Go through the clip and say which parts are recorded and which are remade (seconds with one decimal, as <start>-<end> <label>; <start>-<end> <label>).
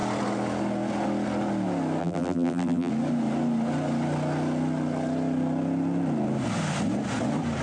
0.0-2.0 recorded; 2.0-2.9 remade; 2.9-7.6 recorded